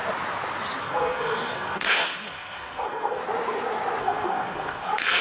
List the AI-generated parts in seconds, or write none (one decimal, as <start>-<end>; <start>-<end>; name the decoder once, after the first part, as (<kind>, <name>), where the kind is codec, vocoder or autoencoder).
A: 0.8-3.2 (codec, SNAC); 4.0-5.2